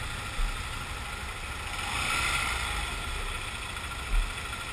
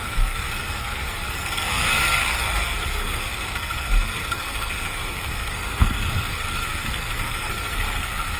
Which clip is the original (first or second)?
first